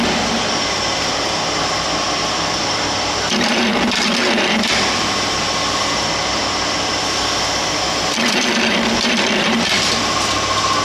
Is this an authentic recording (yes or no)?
no